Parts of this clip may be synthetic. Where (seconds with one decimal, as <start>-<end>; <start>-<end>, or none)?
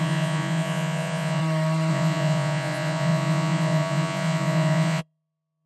0.0-1.4; 1.9-5.7